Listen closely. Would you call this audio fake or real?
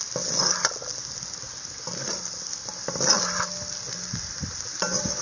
real